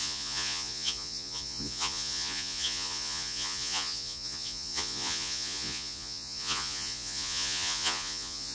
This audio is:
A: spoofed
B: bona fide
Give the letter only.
A